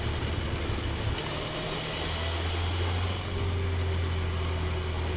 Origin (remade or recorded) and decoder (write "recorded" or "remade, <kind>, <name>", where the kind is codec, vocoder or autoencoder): recorded